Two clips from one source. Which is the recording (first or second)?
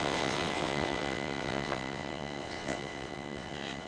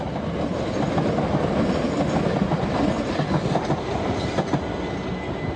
second